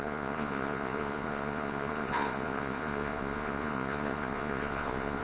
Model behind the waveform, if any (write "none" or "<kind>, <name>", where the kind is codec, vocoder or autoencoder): vocoder, Vocos